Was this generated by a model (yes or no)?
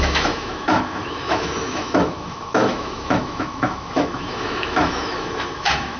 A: yes